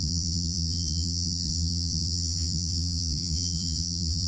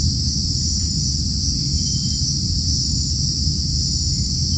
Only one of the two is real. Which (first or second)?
second